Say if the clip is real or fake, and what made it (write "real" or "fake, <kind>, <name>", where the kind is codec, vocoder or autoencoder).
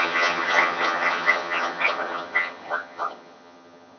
fake, vocoder, HiFi-GAN